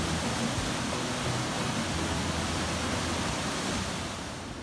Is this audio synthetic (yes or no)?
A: no